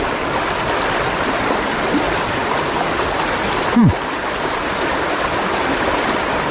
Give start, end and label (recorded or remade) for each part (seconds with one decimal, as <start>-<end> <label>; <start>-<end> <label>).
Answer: 0.0-6.5 recorded